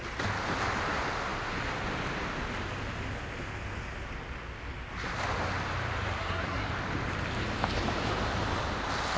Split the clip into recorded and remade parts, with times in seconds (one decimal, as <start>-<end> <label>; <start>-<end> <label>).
0.0-6.2 recorded; 6.2-6.7 remade; 6.7-9.2 recorded